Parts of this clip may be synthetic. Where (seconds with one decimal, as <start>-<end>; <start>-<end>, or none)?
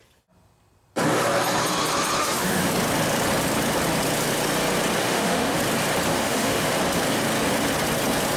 2.2-2.7; 5.0-5.6; 6.1-6.7